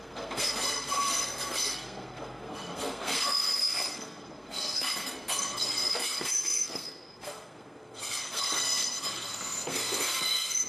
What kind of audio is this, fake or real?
fake